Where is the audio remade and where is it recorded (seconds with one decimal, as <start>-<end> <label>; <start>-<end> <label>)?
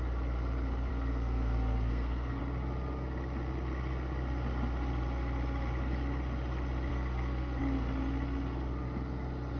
0.0-0.9 recorded; 0.9-2.4 remade; 2.4-6.9 recorded; 6.9-7.6 remade; 7.6-9.6 recorded